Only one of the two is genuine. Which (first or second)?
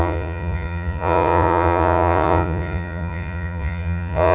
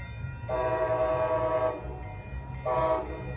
second